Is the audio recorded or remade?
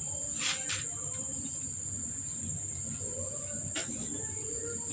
remade